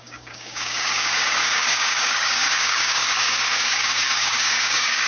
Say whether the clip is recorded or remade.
remade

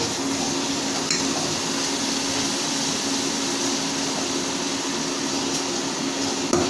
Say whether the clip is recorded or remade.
recorded